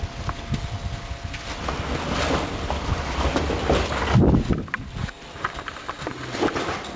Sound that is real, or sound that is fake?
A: real